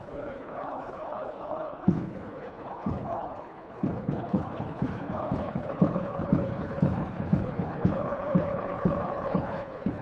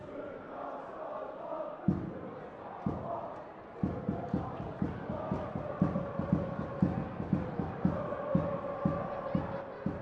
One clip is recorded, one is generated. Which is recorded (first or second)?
second